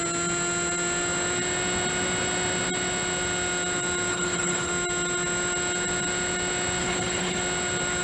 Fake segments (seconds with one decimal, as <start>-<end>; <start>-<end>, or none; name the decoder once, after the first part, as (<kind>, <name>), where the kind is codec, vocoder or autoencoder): 4.1-4.7 (codec, HILCodec); 6.8-7.4